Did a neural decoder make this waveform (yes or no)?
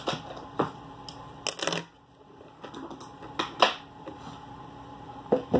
no